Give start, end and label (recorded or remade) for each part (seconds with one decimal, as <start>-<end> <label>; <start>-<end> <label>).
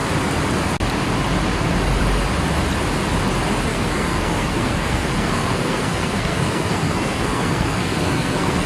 0.0-3.7 recorded; 3.7-8.7 remade